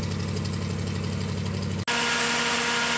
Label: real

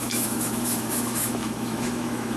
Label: fake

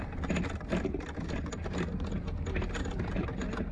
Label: real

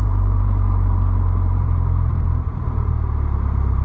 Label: fake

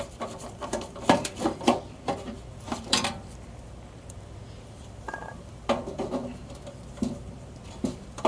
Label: fake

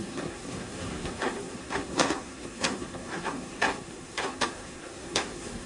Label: fake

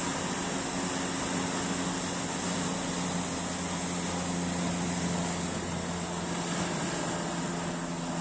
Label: real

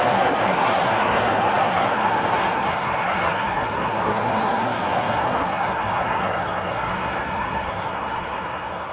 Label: fake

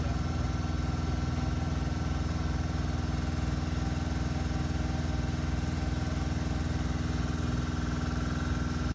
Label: real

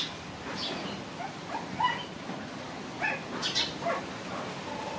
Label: real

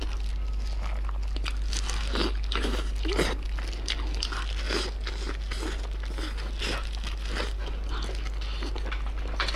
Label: real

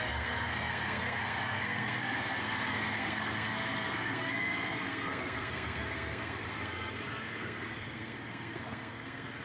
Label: fake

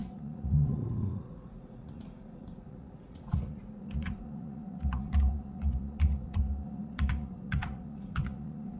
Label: fake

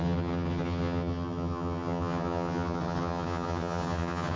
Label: fake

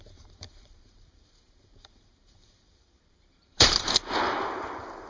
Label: fake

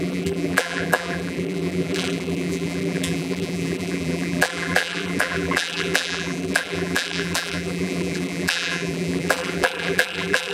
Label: fake